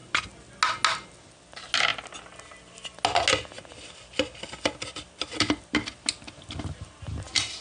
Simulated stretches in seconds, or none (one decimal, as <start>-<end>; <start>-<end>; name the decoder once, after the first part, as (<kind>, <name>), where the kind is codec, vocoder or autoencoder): none